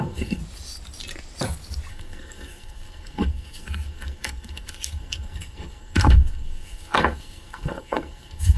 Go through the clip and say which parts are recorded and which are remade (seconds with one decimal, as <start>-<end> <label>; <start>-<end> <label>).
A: 0.0-0.4 remade; 0.4-1.9 recorded; 1.9-8.6 remade